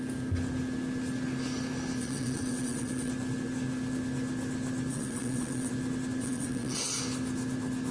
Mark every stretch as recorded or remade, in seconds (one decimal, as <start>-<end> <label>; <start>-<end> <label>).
0.0-2.0 recorded; 2.0-3.1 remade; 3.1-4.9 recorded; 4.9-5.7 remade; 5.7-6.2 recorded; 6.2-7.0 remade; 7.0-7.9 recorded